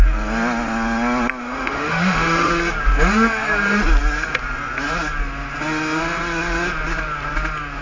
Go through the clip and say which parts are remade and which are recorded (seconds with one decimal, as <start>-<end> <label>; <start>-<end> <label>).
0.0-1.4 recorded; 1.4-2.5 remade; 2.5-7.8 recorded